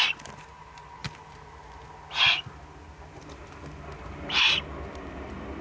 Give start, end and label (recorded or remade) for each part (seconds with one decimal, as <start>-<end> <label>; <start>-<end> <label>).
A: 0.0-5.6 recorded